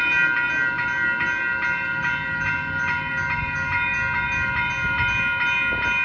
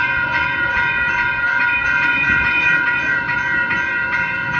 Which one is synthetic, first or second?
second